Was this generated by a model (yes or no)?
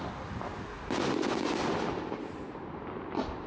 no